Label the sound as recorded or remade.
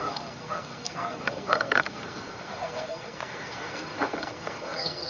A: remade